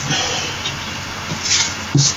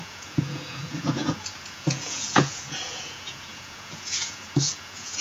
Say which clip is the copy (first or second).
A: second